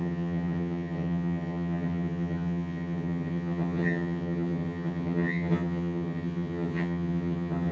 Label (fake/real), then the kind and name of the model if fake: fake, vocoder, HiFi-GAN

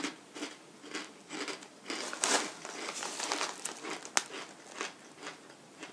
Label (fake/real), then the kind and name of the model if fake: real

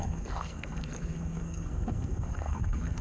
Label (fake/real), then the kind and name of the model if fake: fake, codec, SNAC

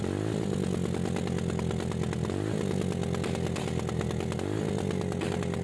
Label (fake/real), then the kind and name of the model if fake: real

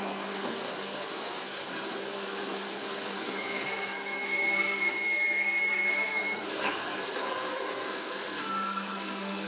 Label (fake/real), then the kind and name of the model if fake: fake, codec, SNAC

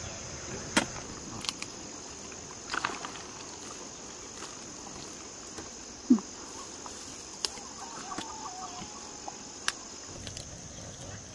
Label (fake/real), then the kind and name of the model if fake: real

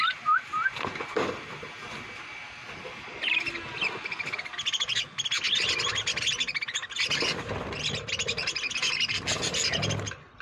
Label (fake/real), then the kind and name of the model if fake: real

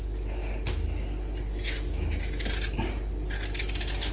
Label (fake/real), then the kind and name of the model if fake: real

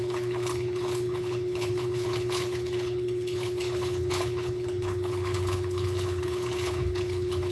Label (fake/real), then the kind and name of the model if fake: fake, codec, HILCodec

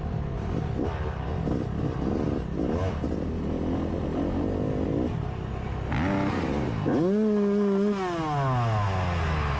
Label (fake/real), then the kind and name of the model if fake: real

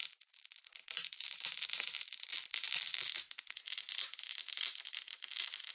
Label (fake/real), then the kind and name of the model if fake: fake, vocoder, BigVGAN v2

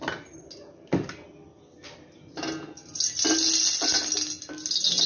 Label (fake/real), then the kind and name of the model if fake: real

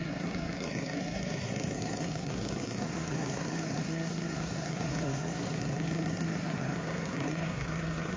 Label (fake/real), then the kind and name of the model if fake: fake, codec, SNAC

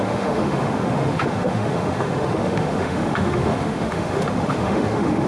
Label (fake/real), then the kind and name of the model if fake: fake, autoencoder, DAC-VAE